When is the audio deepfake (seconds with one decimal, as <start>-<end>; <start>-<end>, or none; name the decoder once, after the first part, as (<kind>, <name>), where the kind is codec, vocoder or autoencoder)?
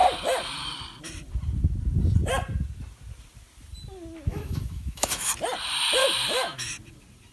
4.3-5.3 (autoencoder, DAC-VAE); 6.0-6.7